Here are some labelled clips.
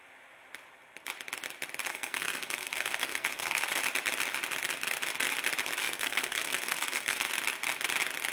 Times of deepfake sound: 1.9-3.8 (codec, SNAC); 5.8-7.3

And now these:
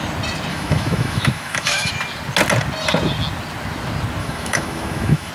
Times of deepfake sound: 0.5-1.9 (autoencoder, DAC-VAE); 4.2-5.3

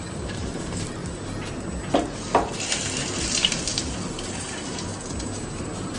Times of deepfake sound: 0.0-1.0 (vocoder, BigVGAN v2); 3.2-4.9; 5.6-6.0

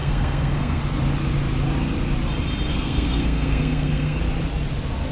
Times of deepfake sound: 0.0-0.8 (codec, SNAC); 2.7-4.2

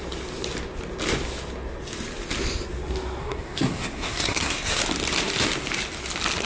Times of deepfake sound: 3.2-4.8 (codec, SNAC)